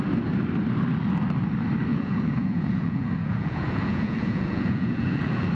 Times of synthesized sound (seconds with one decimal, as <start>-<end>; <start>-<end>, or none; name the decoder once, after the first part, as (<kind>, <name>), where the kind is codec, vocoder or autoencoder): 1.9-5.5 (vocoder, Vocos)